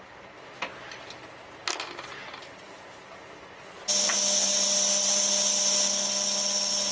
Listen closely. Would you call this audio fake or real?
real